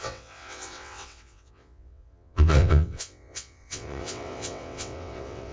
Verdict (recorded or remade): remade